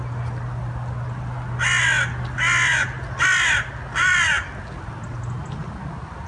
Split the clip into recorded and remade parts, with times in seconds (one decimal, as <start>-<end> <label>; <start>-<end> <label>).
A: 0.0-6.3 recorded